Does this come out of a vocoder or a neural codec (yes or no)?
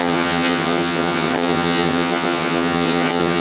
yes